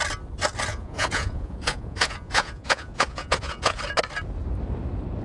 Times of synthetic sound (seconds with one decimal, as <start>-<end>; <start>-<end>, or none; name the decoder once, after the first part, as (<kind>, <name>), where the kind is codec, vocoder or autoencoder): 0.7-3.8 (vocoder, Vocos)